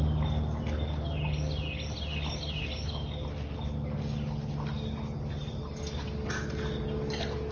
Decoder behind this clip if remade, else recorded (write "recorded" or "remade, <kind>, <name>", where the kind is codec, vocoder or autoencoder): recorded